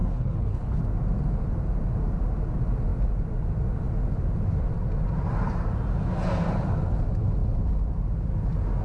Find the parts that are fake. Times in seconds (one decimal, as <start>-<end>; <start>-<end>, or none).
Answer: 0.0-0.8